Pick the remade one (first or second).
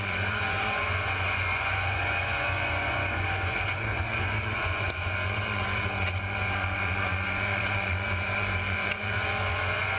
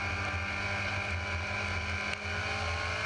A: first